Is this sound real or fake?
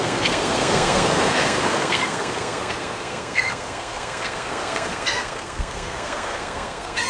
fake